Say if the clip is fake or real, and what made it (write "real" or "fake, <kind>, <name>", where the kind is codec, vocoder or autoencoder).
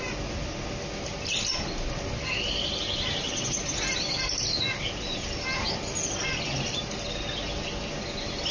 real